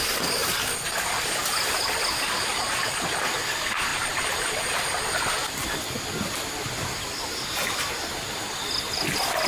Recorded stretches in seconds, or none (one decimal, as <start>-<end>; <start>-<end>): 0.0-9.5